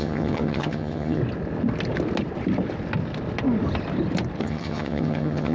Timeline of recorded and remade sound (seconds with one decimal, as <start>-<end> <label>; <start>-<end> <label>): 0.0-1.2 remade; 1.2-4.4 recorded; 4.4-5.5 remade